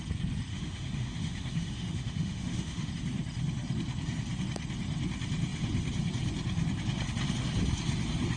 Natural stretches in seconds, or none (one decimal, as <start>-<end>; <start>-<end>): 0.0-0.5; 2.9-8.4